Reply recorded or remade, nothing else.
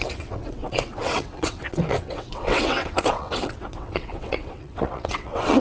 remade